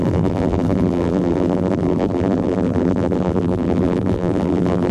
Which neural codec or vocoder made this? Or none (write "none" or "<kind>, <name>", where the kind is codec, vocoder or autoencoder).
vocoder, BigVGAN v2